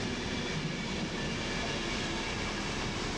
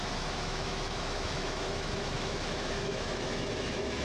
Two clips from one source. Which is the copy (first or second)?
second